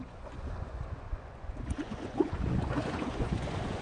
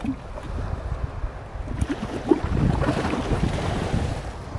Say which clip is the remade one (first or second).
first